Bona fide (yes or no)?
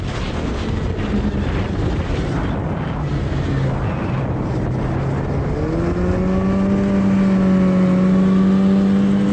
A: yes